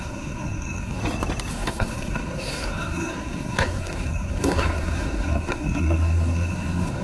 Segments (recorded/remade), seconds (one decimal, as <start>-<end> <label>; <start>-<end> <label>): 0.0-1.0 remade; 1.0-1.5 recorded; 1.5-7.0 remade